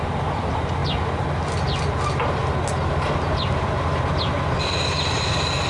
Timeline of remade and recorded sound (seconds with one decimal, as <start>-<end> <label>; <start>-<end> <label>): 0.0-5.7 recorded